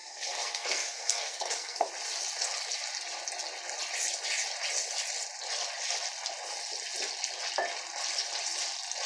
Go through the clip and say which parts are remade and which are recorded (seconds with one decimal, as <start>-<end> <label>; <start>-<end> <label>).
0.0-1.9 remade; 1.9-9.1 recorded